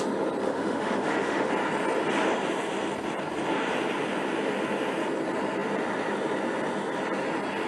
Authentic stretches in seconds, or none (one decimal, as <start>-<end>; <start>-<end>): 0.0-0.4; 1.5-7.7